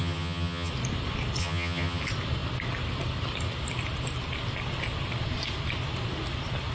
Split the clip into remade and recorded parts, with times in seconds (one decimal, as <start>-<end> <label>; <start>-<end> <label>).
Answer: 0.0-0.7 remade; 0.7-1.4 recorded; 1.4-2.0 remade; 2.0-6.7 recorded